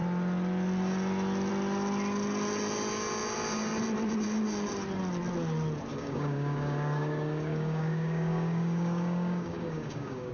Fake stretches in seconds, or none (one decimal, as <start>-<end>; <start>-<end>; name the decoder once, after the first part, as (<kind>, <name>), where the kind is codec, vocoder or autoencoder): 5.9-10.3 (codec, DAC)